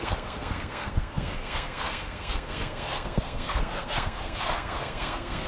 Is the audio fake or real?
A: fake